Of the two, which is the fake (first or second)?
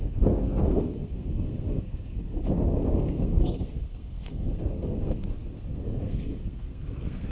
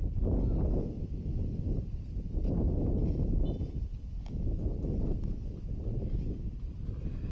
first